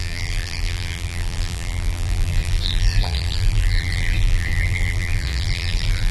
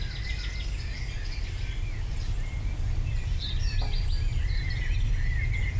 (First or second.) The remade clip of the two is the first